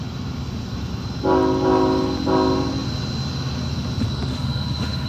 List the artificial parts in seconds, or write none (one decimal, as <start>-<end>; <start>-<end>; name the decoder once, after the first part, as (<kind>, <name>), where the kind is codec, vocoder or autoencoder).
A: 4.3-5.1 (autoencoder, DAC-VAE)

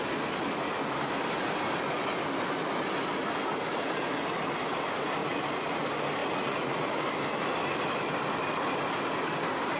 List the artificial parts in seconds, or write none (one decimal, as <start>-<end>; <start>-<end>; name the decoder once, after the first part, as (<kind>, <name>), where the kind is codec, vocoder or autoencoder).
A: 5.2-5.8 (vocoder, Vocos); 6.2-7.0